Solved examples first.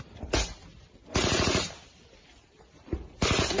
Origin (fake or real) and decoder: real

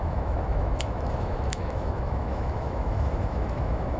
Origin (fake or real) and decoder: fake, autoencoder, DAC-VAE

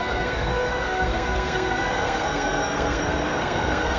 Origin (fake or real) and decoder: fake, codec, SNAC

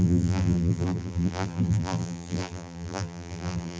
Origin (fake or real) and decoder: fake, vocoder, BigVGAN v2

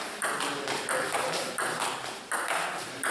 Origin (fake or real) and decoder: fake, vocoder, BigVGAN v2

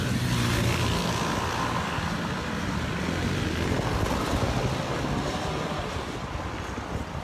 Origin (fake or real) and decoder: real